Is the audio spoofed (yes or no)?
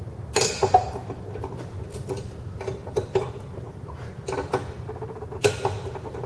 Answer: no